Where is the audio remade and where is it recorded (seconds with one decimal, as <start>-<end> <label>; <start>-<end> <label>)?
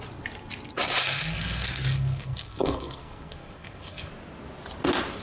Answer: 0.0-1.0 recorded; 1.0-4.1 remade; 4.1-5.2 recorded